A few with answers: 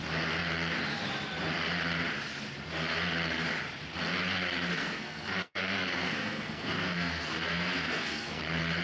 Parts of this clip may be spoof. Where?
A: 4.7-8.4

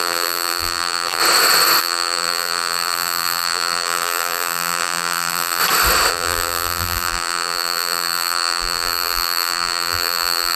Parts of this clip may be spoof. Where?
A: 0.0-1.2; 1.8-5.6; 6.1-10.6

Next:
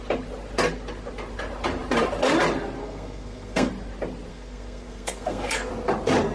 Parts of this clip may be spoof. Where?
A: 2.8-3.7; 4.3-5.7

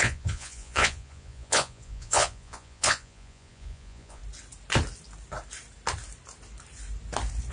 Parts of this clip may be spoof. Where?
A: 0.0-4.2